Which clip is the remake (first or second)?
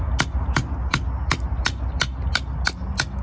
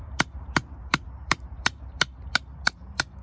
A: second